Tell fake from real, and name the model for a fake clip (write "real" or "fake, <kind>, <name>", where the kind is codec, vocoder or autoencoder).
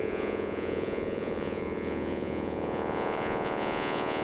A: fake, vocoder, Vocos